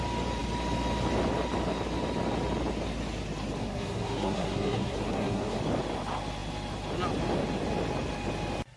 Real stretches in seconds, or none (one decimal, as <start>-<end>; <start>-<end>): 0.0-3.6; 5.6-8.8